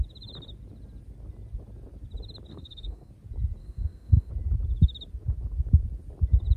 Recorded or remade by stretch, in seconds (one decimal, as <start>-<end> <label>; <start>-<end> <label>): 0.0-2.5 recorded; 2.5-3.1 remade; 3.1-3.6 recorded; 3.6-4.3 remade; 4.3-6.6 recorded